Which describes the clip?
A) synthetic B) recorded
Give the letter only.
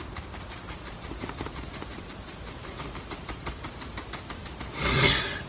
A